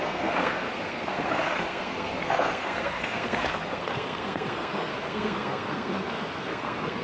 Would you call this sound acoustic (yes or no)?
no